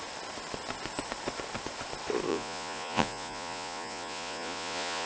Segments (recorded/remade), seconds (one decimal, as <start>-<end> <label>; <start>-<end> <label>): 0.0-2.3 recorded; 2.3-5.1 remade